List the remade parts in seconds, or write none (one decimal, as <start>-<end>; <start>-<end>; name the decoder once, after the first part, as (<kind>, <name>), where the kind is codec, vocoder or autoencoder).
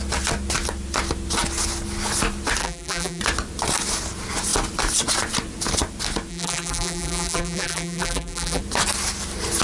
2.6-3.2 (vocoder, BigVGAN v2); 6.3-8.6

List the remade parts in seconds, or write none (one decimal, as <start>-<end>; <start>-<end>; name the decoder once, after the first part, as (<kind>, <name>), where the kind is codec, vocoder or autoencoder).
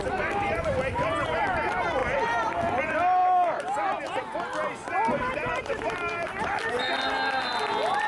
2.0-2.8 (vocoder, BigVGAN v2)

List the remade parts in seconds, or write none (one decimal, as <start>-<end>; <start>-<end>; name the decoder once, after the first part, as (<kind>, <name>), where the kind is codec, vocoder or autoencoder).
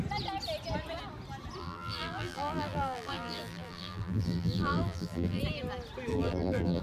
1.6-5.4 (vocoder, BigVGAN v2); 6.1-6.8